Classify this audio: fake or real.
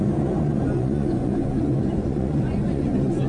fake